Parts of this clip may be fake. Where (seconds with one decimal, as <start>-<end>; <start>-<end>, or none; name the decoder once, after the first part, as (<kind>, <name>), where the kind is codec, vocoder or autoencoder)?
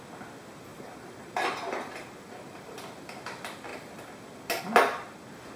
0.7-2.6 (vocoder, BigVGAN v2)